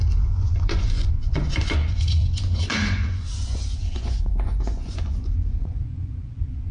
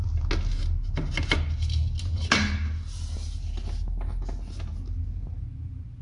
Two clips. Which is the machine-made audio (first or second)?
first